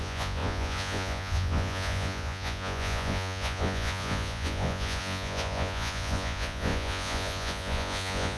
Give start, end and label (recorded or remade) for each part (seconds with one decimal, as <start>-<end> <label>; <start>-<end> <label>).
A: 0.0-8.4 remade